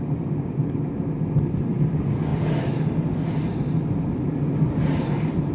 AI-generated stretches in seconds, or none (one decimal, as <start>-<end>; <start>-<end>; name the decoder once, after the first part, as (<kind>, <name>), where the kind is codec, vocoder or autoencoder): none